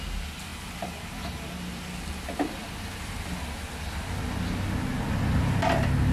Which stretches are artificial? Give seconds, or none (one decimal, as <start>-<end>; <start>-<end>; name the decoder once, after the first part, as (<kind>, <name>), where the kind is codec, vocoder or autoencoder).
none